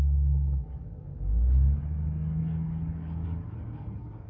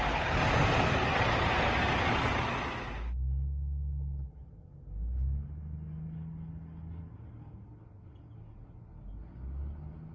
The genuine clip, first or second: second